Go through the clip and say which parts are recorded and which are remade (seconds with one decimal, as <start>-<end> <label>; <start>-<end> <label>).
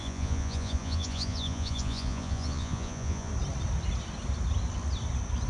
0.0-3.3 remade; 3.3-5.5 recorded